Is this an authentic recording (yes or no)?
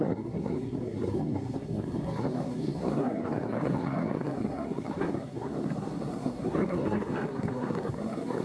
no